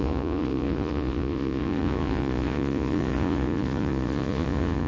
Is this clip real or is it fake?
fake